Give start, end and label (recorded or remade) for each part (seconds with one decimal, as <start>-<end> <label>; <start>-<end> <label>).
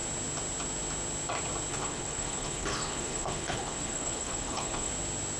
0.0-1.7 recorded; 1.7-4.9 remade; 4.9-5.4 recorded